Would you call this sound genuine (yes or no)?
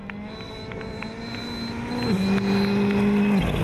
yes